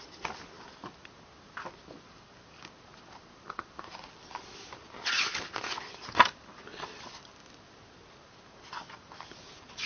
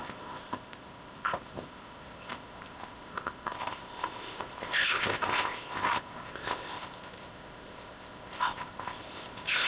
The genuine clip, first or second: first